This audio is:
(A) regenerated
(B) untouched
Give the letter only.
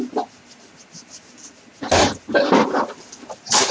B